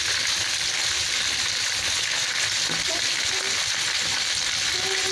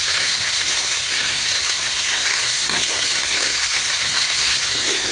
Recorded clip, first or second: first